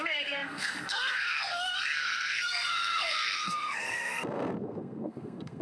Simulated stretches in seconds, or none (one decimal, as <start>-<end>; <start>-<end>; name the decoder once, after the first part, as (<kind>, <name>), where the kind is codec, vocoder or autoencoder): 0.0-5.6 (codec, SNAC)